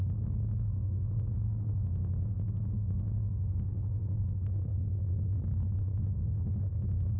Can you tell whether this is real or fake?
fake